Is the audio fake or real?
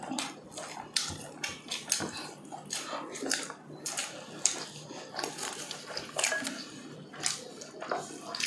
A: real